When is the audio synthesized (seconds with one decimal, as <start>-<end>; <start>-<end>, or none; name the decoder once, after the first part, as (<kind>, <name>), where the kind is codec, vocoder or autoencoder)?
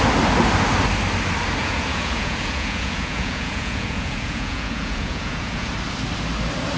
1.6-5.7 (vocoder, Vocos)